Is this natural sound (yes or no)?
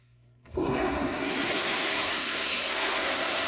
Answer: no